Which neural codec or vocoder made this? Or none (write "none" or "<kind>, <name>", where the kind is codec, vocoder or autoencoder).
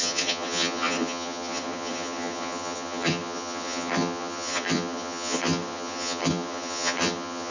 vocoder, HiFi-GAN